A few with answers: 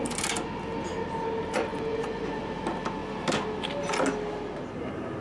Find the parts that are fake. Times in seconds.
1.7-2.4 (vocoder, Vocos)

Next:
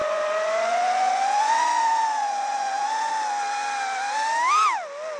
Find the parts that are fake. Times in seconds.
0.0-3.1 (vocoder, Vocos)

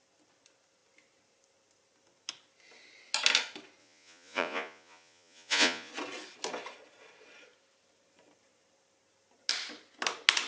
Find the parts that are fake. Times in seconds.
3.8-5.9 (vocoder, Vocos)

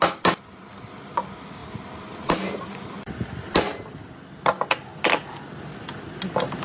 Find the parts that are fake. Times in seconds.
none

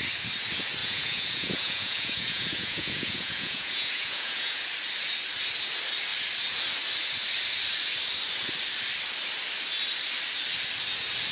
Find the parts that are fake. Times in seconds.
0.8-4.7 (vocoder, Vocos)

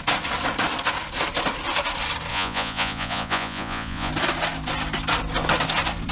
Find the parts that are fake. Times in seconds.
2.3-4.1 (vocoder, Vocos)

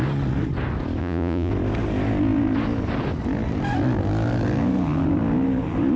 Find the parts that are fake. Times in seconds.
1.0-1.5 (vocoder, Vocos)

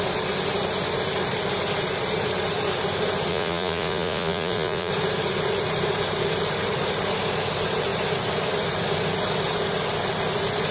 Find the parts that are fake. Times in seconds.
3.3-4.9 (vocoder, Vocos)